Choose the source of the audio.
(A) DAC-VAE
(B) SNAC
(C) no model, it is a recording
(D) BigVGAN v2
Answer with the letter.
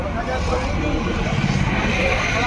C